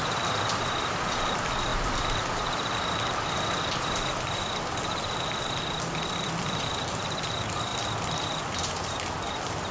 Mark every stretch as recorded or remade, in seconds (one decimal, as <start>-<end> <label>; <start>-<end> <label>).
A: 0.0-7.7 remade; 7.7-8.6 recorded; 8.6-9.7 remade